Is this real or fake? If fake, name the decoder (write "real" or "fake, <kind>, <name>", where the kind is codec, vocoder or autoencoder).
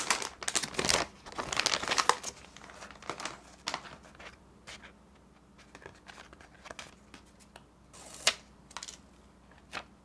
real